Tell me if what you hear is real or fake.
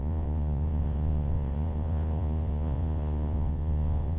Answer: fake